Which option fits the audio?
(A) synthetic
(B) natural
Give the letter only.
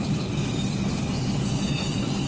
B